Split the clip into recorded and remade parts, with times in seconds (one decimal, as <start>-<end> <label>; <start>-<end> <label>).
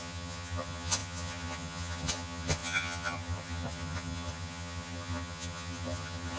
0.0-6.4 remade